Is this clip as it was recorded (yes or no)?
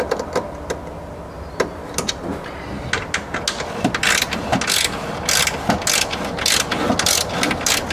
yes